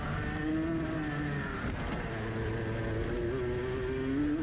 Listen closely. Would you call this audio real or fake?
real